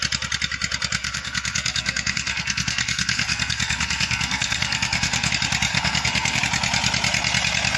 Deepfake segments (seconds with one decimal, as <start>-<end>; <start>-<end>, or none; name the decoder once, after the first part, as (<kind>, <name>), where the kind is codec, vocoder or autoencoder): 1.0-5.3 (codec, SNAC); 5.7-6.4